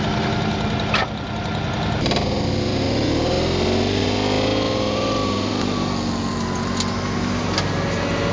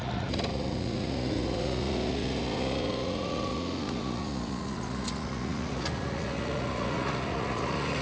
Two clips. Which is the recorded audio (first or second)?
first